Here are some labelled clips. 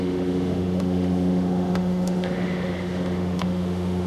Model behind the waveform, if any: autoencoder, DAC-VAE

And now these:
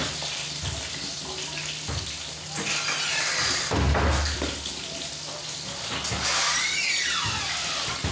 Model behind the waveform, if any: none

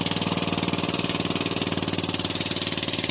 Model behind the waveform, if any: none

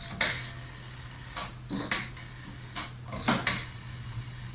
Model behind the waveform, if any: none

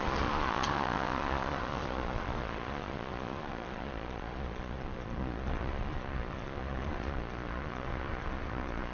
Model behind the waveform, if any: vocoder, Vocos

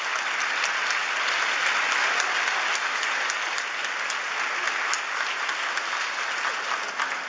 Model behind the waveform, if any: none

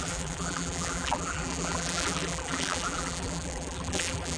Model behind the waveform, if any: vocoder, BigVGAN v2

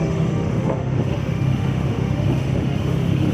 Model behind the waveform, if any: autoencoder, DAC-VAE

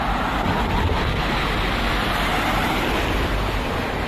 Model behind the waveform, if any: none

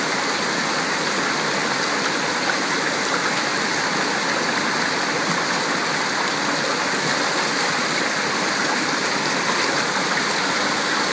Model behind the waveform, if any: none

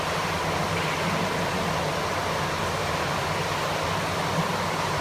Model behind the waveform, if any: none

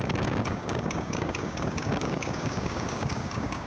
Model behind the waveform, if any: codec, DAC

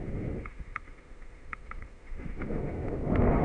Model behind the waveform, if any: autoencoder, DAC-VAE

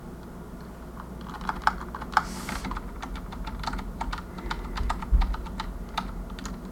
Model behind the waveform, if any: none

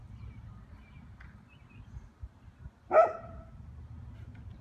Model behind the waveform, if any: none